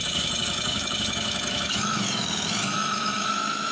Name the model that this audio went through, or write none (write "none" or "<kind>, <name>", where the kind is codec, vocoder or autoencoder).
autoencoder, DAC-VAE